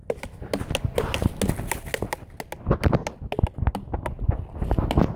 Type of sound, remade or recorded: recorded